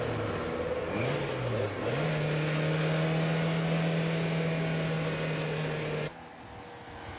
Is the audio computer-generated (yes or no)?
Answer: no